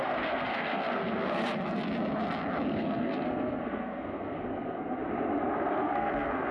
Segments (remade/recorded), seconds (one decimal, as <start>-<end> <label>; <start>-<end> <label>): 0.0-1.4 remade; 1.4-2.7 recorded; 2.7-5.0 remade; 5.0-5.7 recorded; 5.7-6.5 remade